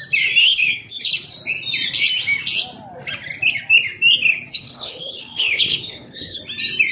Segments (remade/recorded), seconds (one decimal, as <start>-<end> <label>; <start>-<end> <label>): 0.0-0.4 recorded; 0.4-1.1 remade; 1.1-4.5 recorded; 4.5-6.4 remade; 6.4-6.9 recorded